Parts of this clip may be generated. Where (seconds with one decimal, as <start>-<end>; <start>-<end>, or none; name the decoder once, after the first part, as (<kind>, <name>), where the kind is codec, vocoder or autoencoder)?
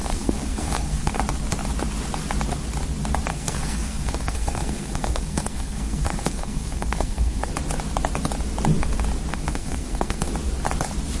0.0-1.2 (codec, SNAC); 3.3-7.5; 9.3-10.3